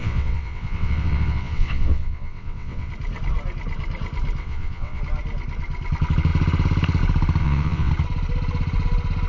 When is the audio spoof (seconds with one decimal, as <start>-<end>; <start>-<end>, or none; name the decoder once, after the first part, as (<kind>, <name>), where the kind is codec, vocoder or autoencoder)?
0.0-2.9 (vocoder, WaveNeXt); 4.4-5.0; 7.4-7.9